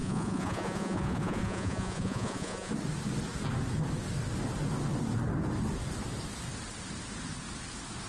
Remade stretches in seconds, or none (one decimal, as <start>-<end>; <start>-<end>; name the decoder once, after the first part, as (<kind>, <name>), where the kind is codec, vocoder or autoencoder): 0.0-2.7 (vocoder, Vocos)